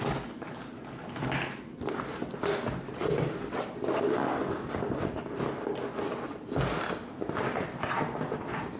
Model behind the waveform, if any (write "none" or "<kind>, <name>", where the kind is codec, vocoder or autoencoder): none